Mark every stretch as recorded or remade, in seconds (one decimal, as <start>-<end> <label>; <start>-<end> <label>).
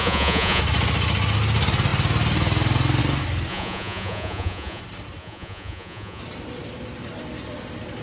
0.0-0.6 remade; 0.6-3.5 recorded; 3.5-4.8 remade; 4.8-5.2 recorded; 5.2-6.2 remade; 6.2-8.0 recorded